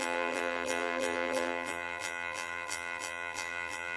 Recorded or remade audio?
remade